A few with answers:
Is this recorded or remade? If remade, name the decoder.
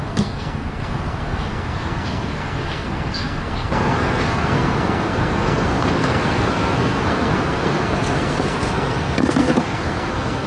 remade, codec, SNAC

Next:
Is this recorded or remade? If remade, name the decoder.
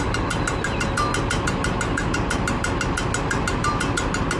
recorded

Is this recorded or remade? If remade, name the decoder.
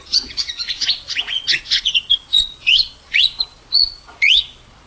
remade, vocoder, Vocos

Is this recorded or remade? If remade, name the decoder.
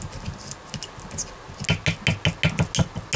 recorded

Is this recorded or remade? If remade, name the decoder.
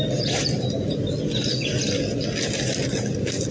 recorded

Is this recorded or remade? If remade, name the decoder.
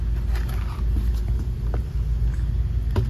recorded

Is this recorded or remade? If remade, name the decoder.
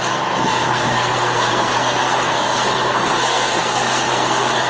remade, codec, SNAC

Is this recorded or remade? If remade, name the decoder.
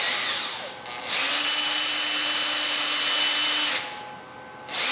recorded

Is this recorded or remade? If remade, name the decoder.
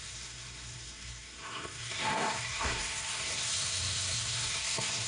remade, codec, SNAC